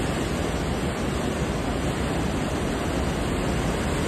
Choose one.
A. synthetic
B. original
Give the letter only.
B